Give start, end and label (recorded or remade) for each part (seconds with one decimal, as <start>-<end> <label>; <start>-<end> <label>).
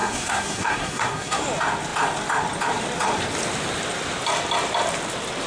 0.0-1.4 remade; 1.4-5.5 recorded